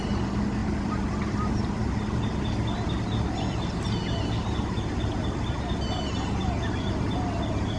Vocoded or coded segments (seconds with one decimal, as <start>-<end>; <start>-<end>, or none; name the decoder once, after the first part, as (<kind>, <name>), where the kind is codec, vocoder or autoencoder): 0.6-1.9 (vocoder, BigVGAN v2)